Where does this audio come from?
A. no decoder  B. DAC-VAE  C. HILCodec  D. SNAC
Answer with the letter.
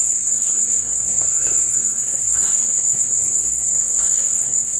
D